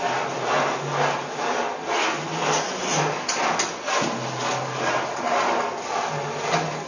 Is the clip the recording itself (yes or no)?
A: yes